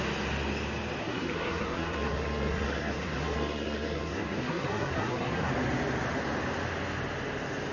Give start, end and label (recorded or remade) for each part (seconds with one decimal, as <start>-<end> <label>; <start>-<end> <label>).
0.0-1.0 recorded; 1.0-5.5 remade; 5.5-7.7 recorded